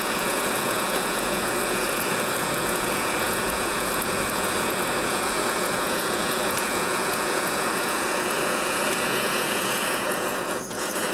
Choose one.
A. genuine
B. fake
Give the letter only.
B